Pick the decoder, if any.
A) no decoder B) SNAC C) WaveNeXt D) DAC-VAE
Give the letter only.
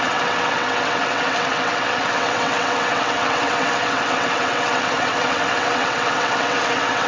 C